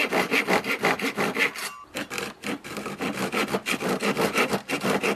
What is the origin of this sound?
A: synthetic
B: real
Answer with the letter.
B